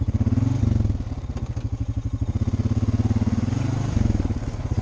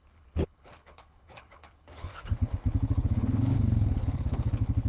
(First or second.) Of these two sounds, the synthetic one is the second